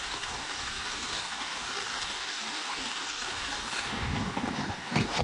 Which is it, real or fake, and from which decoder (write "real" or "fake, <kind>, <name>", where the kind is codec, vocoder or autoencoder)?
fake, codec, DAC